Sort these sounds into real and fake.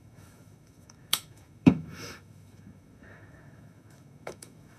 fake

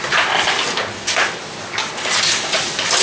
real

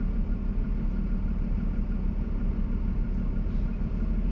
real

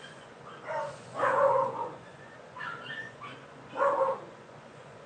fake